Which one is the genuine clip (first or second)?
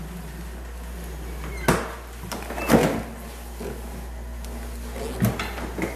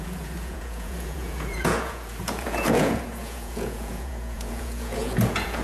first